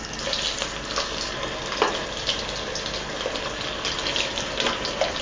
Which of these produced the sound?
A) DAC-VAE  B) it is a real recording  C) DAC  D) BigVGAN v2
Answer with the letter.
B